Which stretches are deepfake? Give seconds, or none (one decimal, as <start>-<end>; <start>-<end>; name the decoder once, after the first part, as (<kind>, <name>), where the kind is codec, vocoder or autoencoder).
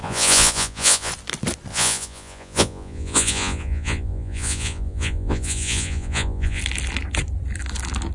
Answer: 0.0-1.1 (vocoder, Vocos); 1.7-6.6